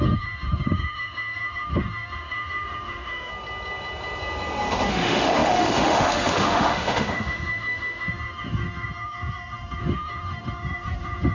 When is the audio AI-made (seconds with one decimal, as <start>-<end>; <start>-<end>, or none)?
0.0-3.3; 4.9-11.3